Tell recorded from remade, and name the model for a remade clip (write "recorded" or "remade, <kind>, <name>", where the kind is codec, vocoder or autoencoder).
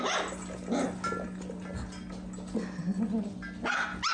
recorded